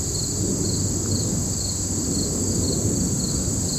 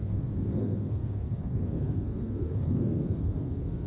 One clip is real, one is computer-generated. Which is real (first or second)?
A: first